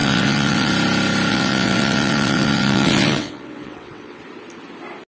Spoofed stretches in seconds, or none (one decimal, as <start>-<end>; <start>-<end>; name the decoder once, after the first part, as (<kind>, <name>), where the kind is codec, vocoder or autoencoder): 0.0-0.7 (vocoder, WaveNeXt); 1.3-4.2